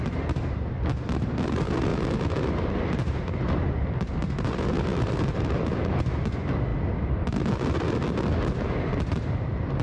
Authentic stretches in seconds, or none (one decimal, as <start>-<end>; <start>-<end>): 0.0-3.6; 4.1-4.9; 6.0-6.7; 7.4-9.8